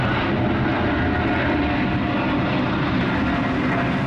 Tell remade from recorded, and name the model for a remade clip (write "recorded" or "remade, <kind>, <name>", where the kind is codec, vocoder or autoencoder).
recorded